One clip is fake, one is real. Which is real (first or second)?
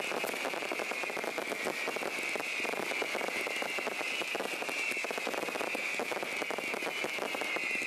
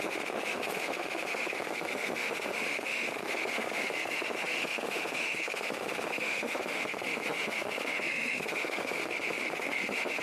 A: first